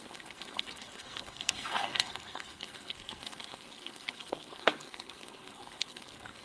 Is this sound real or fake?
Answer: fake